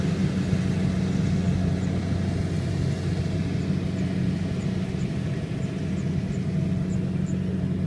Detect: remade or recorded recorded